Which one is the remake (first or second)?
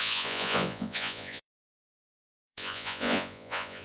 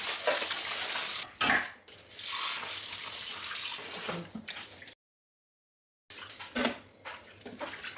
first